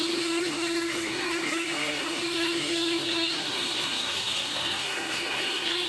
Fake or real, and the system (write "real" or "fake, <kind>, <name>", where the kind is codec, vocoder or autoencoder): fake, codec, SNAC